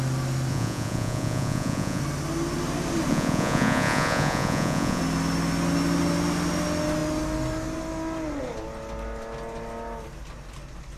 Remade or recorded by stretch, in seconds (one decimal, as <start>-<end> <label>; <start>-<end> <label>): 0.0-0.5 recorded; 0.5-2.0 remade; 2.0-3.1 recorded; 3.1-5.0 remade; 5.0-11.0 recorded